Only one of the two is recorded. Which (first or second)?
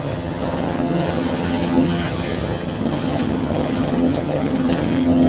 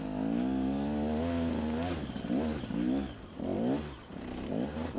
second